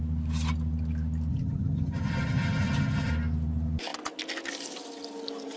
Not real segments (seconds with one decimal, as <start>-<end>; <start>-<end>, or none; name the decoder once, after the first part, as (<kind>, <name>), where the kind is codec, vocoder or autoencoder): 1.3-3.1 (vocoder, HiFi-GAN)